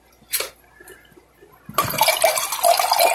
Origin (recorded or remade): recorded